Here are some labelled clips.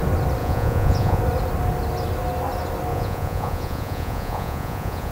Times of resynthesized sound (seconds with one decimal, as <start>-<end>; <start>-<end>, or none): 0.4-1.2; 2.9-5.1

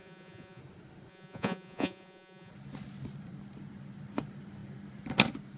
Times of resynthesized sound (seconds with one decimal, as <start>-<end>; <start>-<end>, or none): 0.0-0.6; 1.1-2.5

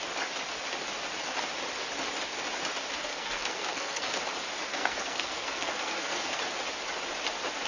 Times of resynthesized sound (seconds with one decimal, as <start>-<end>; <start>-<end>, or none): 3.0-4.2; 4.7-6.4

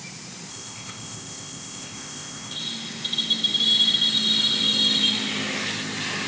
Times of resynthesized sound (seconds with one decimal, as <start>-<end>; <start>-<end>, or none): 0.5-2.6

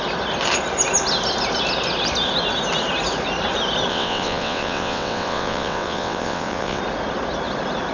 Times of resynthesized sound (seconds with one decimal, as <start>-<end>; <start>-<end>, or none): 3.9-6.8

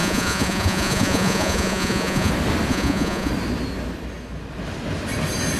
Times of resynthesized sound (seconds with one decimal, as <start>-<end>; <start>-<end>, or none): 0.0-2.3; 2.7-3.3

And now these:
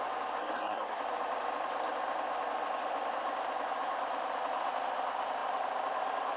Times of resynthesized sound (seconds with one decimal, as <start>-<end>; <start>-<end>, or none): 0.4-1.0